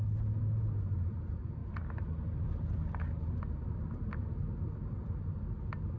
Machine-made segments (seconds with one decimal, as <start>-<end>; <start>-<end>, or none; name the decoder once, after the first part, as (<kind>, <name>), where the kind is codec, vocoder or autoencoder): none